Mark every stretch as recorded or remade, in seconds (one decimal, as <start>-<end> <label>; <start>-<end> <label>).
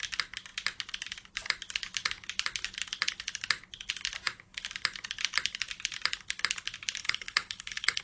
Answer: 0.0-7.0 recorded; 7.0-8.0 remade